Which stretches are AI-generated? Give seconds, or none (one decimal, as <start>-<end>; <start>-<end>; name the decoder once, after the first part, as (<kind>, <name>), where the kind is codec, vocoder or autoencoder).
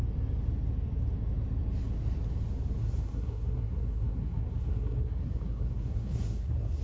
2.8-6.8 (codec, SNAC)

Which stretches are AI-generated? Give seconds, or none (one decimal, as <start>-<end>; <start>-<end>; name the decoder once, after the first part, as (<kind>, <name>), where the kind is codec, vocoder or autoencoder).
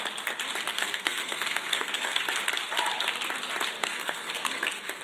0.7-2.2 (codec, SNAC); 3.8-5.0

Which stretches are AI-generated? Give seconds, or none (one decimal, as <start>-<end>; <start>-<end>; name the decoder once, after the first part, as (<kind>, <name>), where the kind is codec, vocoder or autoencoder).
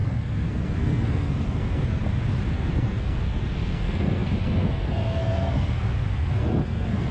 0.0-2.0 (codec, SNAC); 2.5-7.1